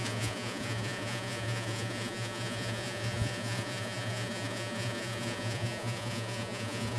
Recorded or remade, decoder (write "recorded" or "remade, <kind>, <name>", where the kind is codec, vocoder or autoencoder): remade, vocoder, Vocos